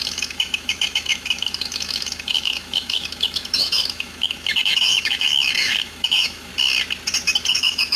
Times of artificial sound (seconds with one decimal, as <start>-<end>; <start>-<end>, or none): 0.0-6.5; 7.5-8.0